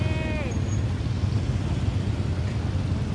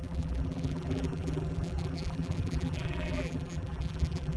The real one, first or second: first